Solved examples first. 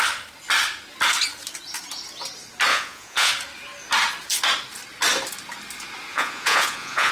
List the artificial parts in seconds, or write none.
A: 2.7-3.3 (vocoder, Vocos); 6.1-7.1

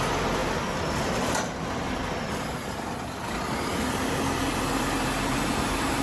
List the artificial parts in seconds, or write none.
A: none